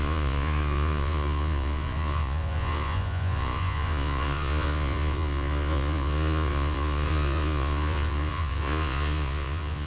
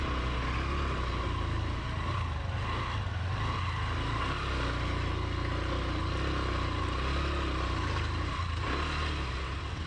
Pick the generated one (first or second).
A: first